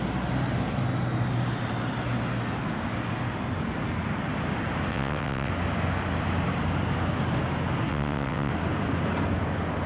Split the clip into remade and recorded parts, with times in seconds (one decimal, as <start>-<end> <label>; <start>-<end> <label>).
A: 0.0-4.9 recorded; 4.9-5.5 remade; 5.5-7.9 recorded; 7.9-8.5 remade; 8.5-9.9 recorded